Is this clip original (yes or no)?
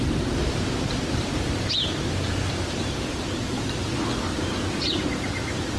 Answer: no